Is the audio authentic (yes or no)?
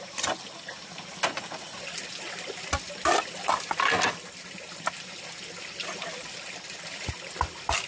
yes